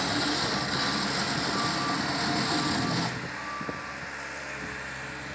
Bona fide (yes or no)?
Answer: yes